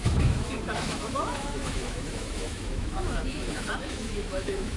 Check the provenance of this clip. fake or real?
fake